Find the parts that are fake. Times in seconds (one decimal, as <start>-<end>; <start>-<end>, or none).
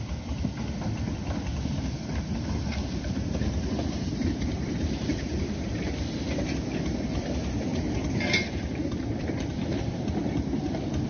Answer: 2.7-6.4; 7.7-10.7